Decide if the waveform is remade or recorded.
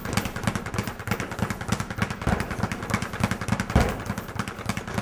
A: recorded